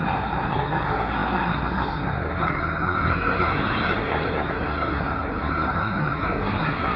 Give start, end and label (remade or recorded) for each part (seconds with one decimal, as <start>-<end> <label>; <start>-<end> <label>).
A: 0.0-7.0 remade